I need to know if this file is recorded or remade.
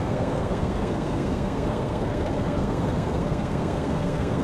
remade